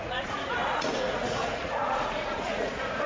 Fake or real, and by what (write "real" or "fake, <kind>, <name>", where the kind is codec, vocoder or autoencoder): fake, vocoder, Vocos